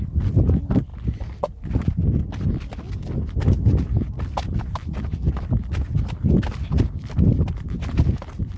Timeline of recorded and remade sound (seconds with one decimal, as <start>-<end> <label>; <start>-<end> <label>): 0.0-8.6 recorded